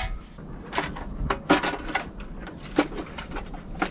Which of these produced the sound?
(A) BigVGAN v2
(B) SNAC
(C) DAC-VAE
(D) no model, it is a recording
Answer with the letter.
D